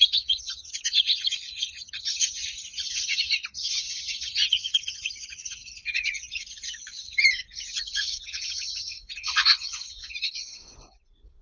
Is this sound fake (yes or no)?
yes